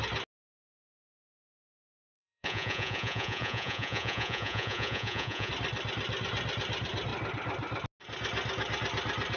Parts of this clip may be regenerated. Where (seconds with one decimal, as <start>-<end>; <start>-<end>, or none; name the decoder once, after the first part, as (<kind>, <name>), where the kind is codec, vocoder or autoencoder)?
1.8-5.5 (vocoder, Vocos)